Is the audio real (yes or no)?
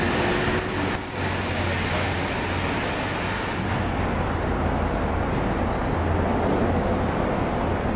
yes